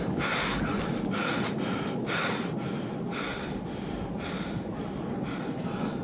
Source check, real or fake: real